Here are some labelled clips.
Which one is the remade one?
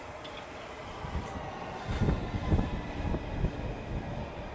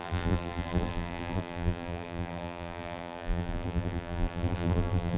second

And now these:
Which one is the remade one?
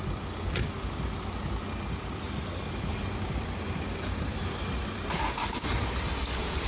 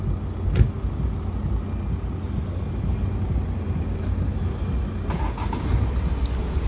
first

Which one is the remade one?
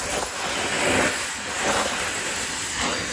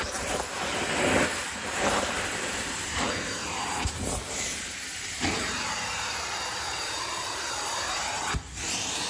second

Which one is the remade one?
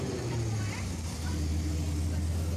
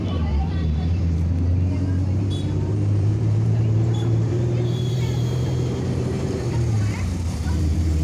second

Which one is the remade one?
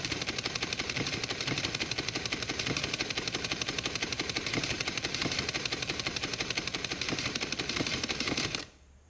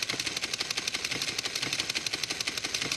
first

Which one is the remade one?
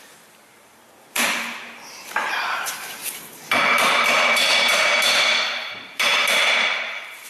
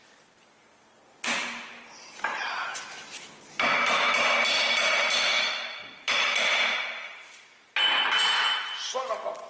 first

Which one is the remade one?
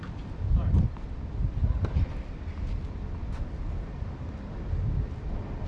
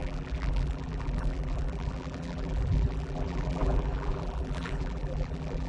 second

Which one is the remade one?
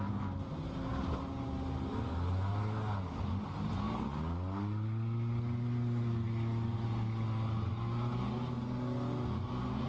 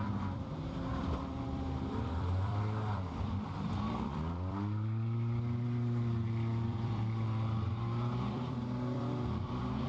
second